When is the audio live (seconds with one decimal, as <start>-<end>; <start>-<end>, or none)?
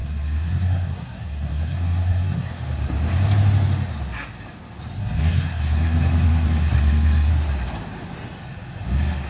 2.5-5.0; 7.3-9.3